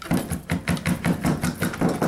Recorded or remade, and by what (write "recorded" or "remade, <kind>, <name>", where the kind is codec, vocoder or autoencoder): recorded